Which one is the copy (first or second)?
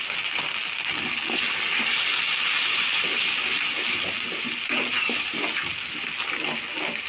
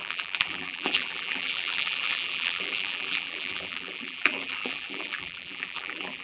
second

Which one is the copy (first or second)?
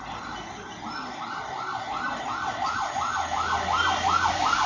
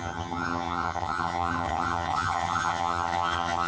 second